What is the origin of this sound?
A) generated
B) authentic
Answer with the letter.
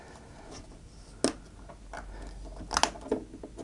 B